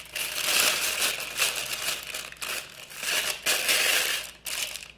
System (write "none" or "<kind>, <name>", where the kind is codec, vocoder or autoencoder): none